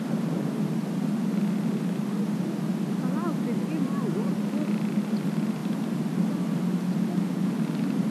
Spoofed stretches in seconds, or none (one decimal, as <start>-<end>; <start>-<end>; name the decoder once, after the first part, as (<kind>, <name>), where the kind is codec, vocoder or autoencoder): none